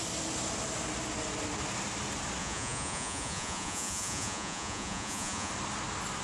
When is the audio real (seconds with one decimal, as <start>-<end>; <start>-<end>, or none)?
0.0-2.4; 5.5-6.2